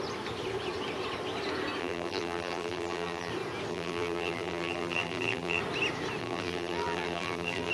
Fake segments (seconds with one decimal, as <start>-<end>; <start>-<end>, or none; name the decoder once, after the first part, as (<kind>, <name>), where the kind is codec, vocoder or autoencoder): 1.8-3.3 (vocoder, BigVGAN v2); 3.7-5.6; 6.2-7.7

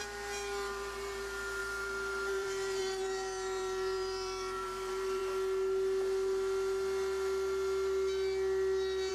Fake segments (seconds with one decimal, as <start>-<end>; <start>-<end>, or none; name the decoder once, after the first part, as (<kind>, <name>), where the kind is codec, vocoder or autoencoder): 0.0-5.2 (vocoder, BigVGAN v2)